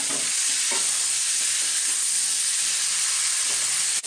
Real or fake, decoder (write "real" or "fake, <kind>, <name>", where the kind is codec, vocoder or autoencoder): fake, vocoder, BigVGAN v2